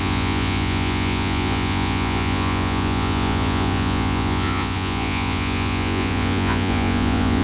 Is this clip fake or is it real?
fake